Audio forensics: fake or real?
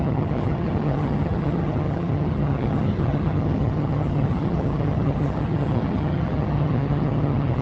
fake